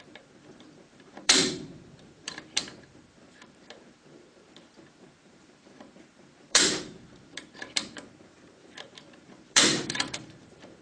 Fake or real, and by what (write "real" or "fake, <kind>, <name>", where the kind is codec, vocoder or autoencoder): fake, vocoder, BigVGAN v2